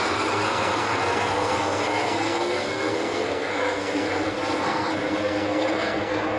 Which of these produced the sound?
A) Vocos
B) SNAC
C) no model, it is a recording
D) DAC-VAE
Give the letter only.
B